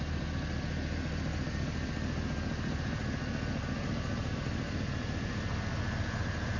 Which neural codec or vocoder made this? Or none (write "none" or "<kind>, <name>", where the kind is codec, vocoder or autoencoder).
none